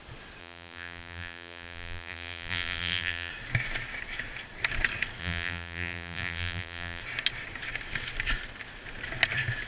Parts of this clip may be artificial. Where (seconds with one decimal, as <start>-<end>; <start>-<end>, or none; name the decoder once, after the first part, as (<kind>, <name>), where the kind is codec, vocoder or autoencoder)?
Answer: 0.4-3.3 (vocoder, BigVGAN v2); 5.2-7.0